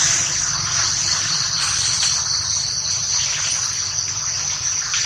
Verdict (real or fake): real